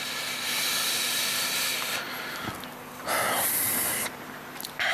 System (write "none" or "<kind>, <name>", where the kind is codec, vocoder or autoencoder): none